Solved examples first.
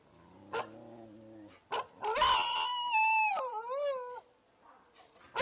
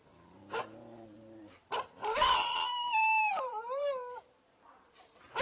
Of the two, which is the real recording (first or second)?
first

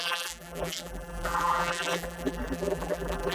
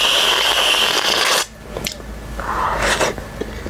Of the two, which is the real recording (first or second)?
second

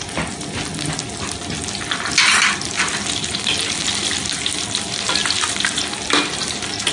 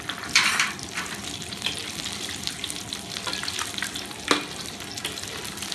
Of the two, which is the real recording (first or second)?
first